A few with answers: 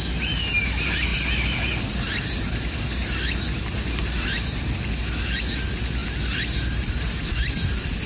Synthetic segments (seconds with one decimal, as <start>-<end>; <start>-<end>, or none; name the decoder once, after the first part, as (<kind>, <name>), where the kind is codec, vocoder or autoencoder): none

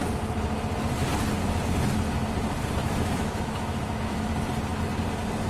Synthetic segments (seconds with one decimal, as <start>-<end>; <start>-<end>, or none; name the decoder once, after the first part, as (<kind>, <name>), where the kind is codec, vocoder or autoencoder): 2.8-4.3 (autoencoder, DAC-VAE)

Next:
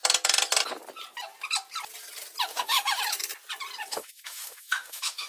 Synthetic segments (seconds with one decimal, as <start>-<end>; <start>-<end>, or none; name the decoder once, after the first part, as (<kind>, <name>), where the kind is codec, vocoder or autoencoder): 2.5-3.0 (autoencoder, DAC-VAE); 3.9-5.3

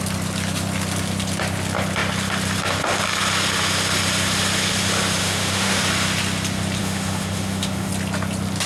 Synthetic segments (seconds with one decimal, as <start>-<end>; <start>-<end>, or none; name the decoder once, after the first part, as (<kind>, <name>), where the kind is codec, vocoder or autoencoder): 5.2-5.8 (autoencoder, DAC-VAE); 6.8-7.9

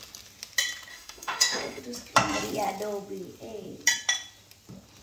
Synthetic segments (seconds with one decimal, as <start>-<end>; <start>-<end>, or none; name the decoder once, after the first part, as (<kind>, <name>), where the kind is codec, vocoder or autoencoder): 0.9-1.8 (autoencoder, DAC-VAE)

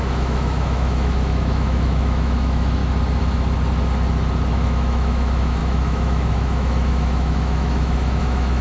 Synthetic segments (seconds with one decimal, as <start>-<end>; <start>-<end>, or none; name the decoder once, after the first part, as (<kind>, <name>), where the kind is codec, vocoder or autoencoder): 0.0-2.8 (autoencoder, DAC-VAE); 4.5-8.6